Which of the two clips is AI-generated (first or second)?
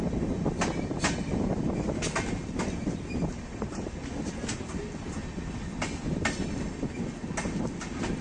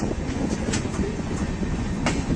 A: second